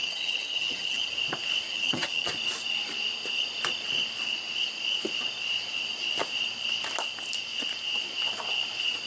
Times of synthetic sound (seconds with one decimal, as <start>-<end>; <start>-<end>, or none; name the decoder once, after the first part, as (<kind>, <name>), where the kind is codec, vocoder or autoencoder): 0.0-1.1 (vocoder, HiFi-GAN); 1.7-2.3